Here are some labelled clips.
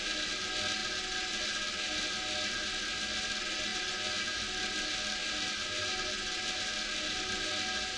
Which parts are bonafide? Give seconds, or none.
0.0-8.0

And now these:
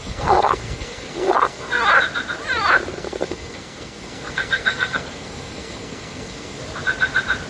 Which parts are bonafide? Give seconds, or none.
1.7-2.9; 6.6-7.5

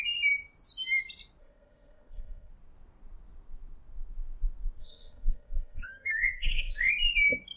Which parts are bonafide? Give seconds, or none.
0.0-1.4; 2.5-4.8; 6.9-7.6

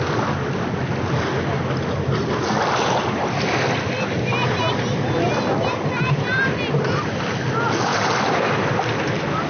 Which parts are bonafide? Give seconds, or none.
0.0-9.5

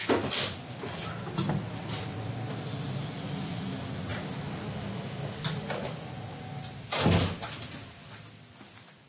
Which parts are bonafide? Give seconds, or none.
1.1-9.1

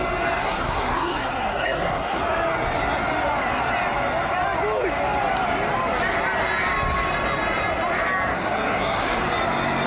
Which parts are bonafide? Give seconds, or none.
0.0-0.4; 2.2-8.3; 9.2-9.9

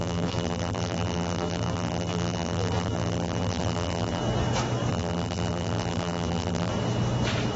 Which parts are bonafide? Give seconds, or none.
4.2-4.9; 6.7-7.6

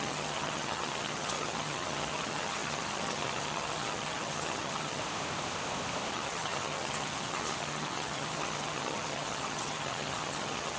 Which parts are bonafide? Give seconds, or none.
5.0-6.1